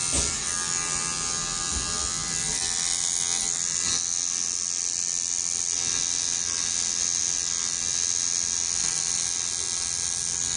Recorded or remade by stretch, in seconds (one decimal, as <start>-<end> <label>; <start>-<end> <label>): 0.0-10.6 recorded